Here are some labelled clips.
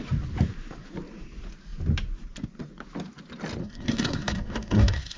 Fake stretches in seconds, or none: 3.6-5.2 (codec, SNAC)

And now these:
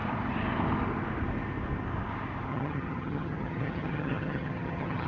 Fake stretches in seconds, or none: 2.5-5.1 (vocoder, HiFi-GAN)

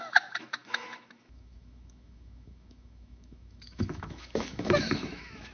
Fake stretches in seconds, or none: 0.0-5.5 (autoencoder, DAC-VAE)

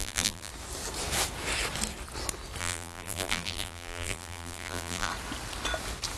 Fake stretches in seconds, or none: 0.0-0.5 (vocoder, BigVGAN v2); 2.6-5.1

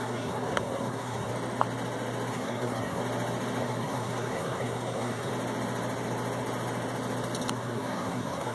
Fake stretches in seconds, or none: 0.0-1.3 (codec, SNAC); 2.3-3.0; 3.6-5.3; 7.5-8.5

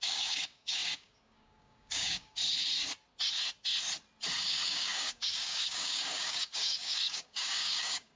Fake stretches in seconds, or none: 0.0-2.4 (codec, DAC); 4.4-8.2

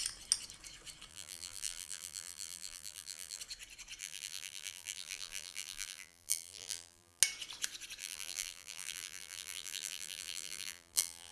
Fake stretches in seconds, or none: 1.1-3.4 (vocoder, BigVGAN v2); 4.0-7.2; 8.0-11.3

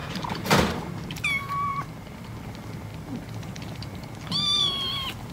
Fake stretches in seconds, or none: 0.0-0.6 (vocoder, BigVGAN v2)